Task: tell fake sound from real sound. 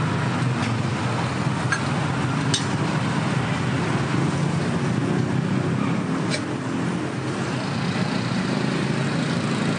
real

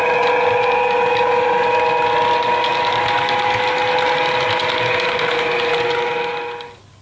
real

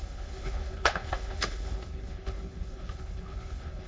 fake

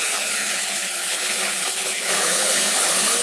fake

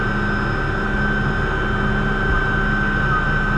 real